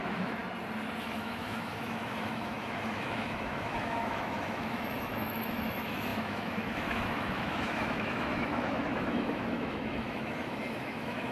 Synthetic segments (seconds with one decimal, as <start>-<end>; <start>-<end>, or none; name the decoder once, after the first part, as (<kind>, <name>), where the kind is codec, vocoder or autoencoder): 0.0-0.4 (autoencoder, DAC-VAE); 1.0-11.3